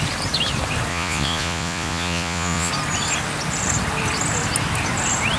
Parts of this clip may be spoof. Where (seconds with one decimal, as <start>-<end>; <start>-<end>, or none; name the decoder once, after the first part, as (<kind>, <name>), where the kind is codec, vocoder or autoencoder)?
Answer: 0.9-2.7 (vocoder, Vocos)